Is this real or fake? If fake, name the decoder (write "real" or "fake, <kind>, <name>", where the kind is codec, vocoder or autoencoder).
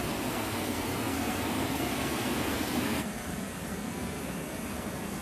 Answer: fake, codec, SNAC